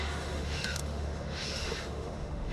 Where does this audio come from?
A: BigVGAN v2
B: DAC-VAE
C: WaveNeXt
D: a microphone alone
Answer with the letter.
B